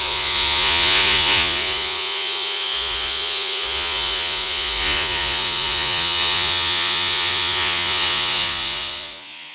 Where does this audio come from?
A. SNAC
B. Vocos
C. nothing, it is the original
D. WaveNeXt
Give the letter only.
B